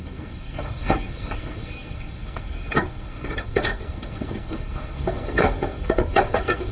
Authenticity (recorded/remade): remade